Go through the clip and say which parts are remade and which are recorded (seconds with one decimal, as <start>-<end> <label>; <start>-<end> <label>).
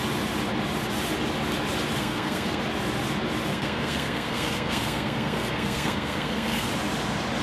0.0-2.0 recorded; 2.0-2.6 remade; 2.6-3.5 recorded; 3.5-6.7 remade; 6.7-7.4 recorded